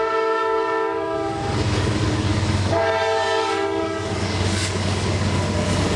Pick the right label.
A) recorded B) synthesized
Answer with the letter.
B